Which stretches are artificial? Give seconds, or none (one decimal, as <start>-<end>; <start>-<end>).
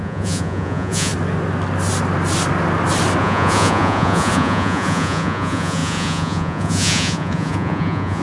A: 0.0-1.1; 3.2-8.2